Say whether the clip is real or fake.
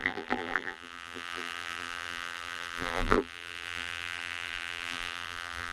fake